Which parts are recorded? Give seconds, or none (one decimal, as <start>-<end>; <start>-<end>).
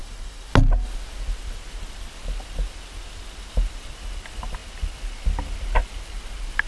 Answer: 0.5-6.7